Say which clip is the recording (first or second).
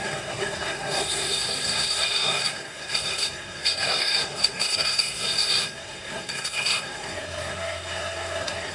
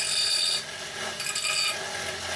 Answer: second